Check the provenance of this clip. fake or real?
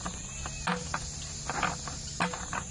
real